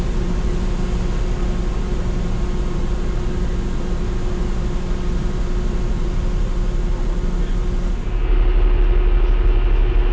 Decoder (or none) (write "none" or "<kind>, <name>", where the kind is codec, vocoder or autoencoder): none